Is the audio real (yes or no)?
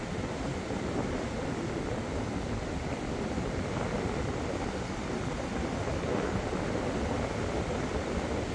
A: yes